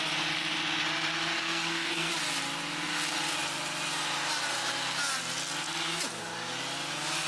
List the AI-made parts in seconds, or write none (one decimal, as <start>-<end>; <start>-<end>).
1.4-2.1